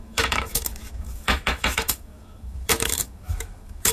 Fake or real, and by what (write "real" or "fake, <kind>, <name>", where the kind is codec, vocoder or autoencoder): fake, autoencoder, DAC-VAE